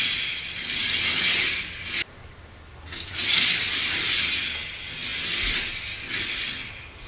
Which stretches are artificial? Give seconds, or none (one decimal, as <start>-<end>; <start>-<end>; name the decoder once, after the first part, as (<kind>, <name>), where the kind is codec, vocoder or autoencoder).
none